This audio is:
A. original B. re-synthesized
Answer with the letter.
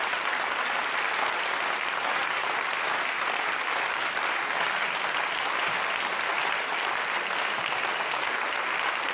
A